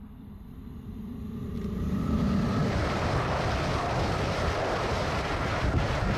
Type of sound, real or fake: fake